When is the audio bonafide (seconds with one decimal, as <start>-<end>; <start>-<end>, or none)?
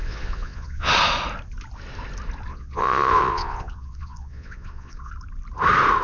0.9-2.5; 5.1-6.0